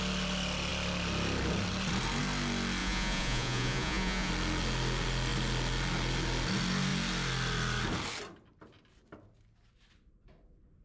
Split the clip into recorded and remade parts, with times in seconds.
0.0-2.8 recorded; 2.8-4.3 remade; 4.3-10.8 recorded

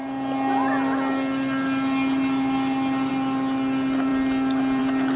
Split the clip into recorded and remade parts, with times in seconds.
0.0-5.2 recorded

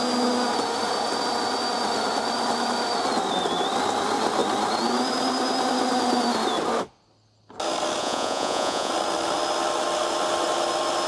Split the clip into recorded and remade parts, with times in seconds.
0.0-8.0 recorded; 8.0-8.9 remade; 8.9-11.1 recorded

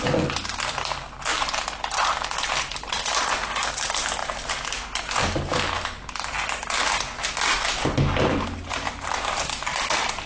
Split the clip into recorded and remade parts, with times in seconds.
0.0-10.3 recorded